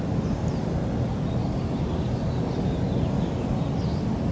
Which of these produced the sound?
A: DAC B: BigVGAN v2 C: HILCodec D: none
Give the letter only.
D